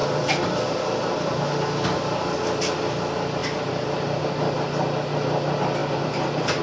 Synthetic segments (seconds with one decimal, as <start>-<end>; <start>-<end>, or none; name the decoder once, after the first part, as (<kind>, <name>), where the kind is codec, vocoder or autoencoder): 0.0-1.4 (vocoder, BigVGAN v2); 3.4-4.2; 5.8-6.6